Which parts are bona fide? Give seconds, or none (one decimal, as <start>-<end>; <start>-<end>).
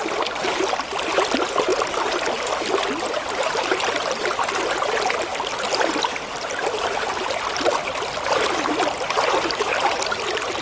0.0-10.6